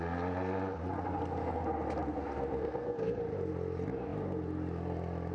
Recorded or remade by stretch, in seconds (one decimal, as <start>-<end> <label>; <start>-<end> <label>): 0.0-2.6 recorded; 2.6-3.2 remade; 3.2-5.3 recorded